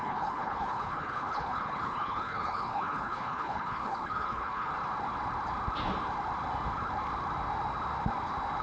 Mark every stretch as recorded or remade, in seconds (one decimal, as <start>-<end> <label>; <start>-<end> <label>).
0.0-4.7 remade; 4.7-8.6 recorded